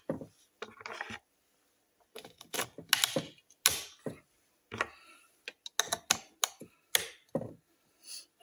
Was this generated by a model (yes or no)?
no